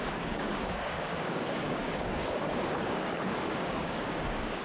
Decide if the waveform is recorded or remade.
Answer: remade